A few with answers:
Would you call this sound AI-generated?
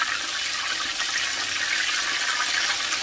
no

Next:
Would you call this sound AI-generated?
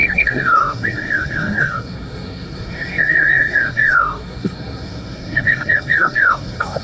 yes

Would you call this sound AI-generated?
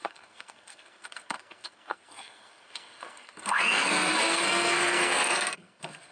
yes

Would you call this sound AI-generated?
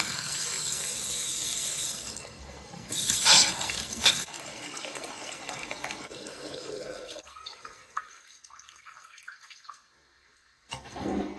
yes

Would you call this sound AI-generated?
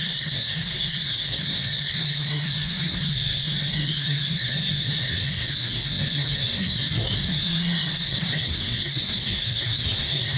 yes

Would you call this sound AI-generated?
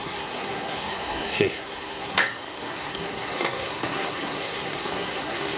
yes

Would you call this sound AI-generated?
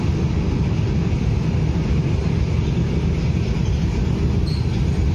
no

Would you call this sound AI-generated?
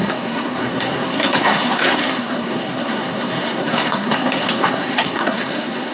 yes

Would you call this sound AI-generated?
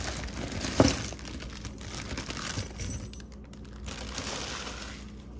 no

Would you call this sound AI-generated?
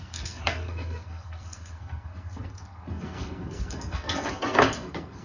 yes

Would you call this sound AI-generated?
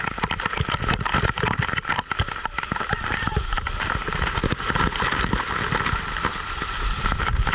no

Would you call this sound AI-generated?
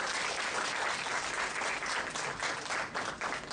no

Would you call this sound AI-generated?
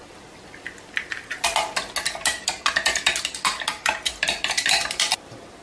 no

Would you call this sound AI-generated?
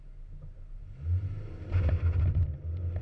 no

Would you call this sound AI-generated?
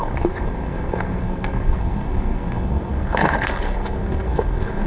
yes